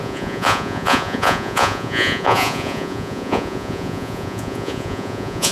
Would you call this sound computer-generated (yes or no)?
yes